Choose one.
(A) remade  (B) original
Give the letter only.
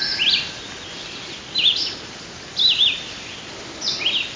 B